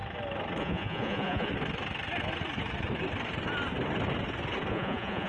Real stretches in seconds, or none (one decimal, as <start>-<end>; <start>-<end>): 0.0-0.6; 1.5-4.7